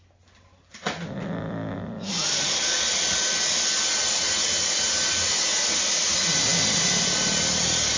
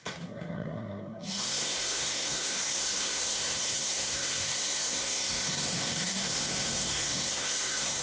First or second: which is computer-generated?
second